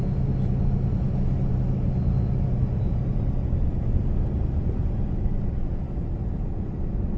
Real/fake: fake